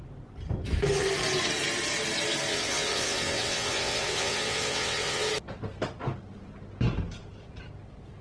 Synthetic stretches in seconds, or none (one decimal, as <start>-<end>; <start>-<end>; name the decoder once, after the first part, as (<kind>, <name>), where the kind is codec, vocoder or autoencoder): 2.5-5.3 (vocoder, WaveNeXt)